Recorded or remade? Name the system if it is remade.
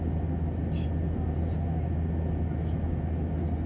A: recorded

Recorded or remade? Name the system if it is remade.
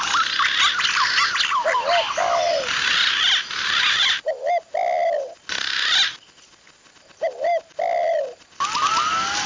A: recorded